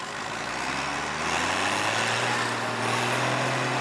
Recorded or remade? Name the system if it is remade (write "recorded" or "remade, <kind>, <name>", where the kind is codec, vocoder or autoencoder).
recorded